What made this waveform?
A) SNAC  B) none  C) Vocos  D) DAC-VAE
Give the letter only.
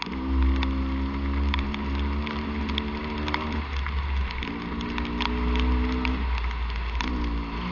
B